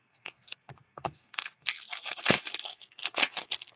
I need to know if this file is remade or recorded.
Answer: remade